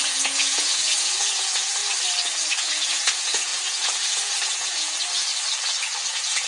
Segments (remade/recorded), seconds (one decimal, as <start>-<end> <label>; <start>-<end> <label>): 0.0-1.8 remade; 1.8-2.3 recorded; 2.3-5.3 remade; 5.3-6.1 recorded; 6.1-6.5 remade